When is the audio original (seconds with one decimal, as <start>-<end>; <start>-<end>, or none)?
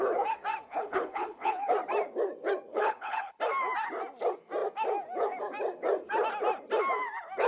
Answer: 0.0-0.7; 1.7-2.7; 3.4-7.5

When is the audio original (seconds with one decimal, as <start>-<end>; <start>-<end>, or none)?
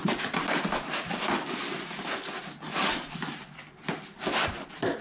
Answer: 0.0-5.0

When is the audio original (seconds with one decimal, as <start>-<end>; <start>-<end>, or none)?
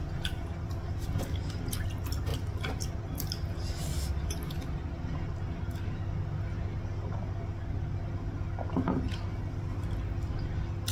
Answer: 0.0-10.9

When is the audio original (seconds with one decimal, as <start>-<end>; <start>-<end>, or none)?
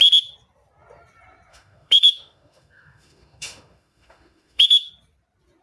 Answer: 0.0-1.5; 4.9-5.6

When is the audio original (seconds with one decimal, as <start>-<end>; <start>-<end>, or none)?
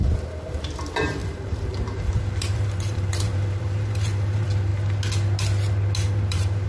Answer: 4.7-6.1